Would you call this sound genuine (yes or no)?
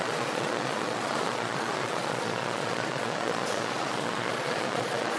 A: no